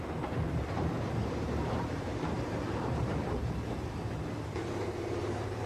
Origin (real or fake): fake